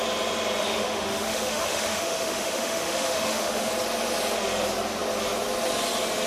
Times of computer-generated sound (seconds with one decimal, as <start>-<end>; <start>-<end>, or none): 0.6-3.7